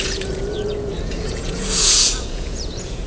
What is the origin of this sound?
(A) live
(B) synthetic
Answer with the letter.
B